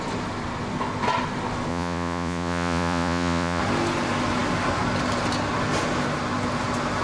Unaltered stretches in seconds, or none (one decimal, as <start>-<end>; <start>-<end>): 0.0-1.7; 3.6-7.0